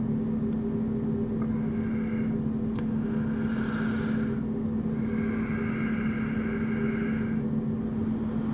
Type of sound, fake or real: real